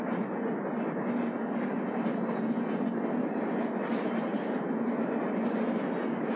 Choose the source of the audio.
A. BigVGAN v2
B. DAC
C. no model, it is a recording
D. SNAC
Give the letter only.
C